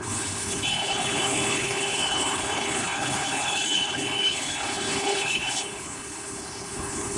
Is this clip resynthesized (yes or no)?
yes